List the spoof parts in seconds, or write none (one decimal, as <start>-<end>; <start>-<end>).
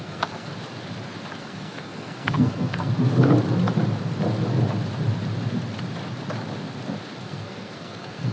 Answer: 0.0-0.5; 1.4-2.9; 7.2-8.3